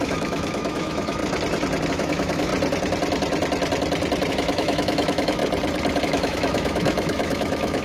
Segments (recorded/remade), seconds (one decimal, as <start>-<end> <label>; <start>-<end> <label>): 0.0-1.2 remade; 1.2-1.9 recorded; 1.9-2.5 remade; 2.5-4.3 recorded; 4.3-5.4 remade; 5.4-6.0 recorded; 6.0-7.8 remade